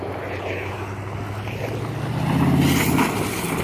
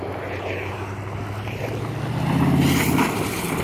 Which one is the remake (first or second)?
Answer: second